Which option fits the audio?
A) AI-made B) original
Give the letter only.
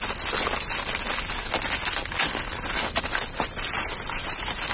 B